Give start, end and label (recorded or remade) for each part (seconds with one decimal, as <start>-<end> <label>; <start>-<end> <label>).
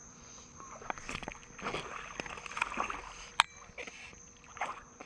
0.0-1.4 remade; 1.4-4.5 recorded; 4.5-5.1 remade